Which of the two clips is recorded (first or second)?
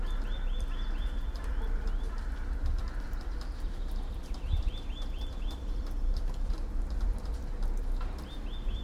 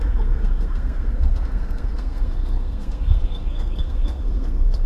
first